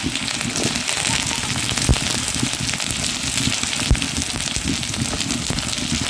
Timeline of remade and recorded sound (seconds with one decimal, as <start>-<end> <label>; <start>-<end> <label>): 0.0-6.1 recorded